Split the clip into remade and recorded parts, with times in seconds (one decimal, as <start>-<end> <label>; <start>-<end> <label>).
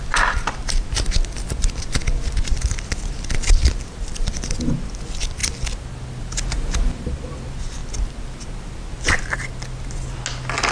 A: 0.0-10.7 recorded